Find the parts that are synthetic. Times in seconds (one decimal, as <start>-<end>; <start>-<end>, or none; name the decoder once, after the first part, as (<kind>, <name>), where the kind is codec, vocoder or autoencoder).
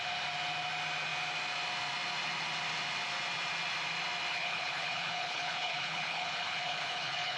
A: 4.3-7.4 (codec, HILCodec)